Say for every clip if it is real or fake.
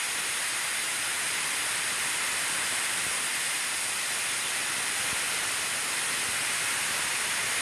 real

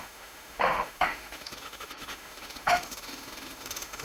fake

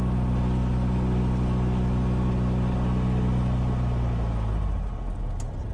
real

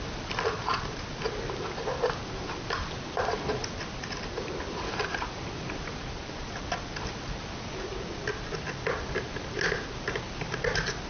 real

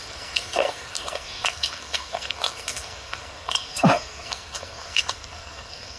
fake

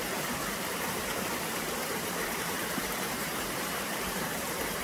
fake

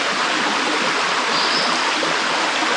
real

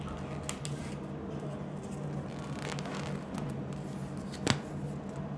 real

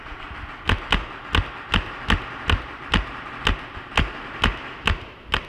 real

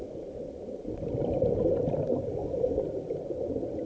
fake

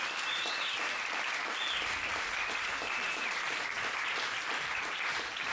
real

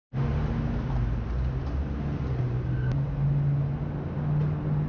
real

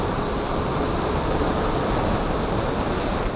real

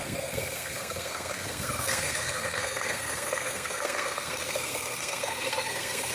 fake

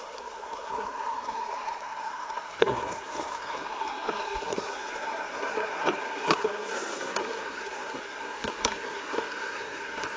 fake